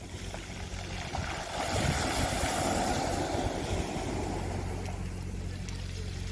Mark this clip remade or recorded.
recorded